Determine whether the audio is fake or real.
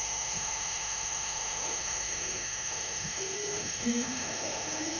fake